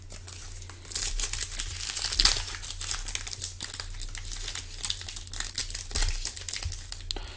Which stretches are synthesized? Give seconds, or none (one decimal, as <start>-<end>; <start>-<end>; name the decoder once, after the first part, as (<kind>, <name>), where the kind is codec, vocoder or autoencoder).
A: none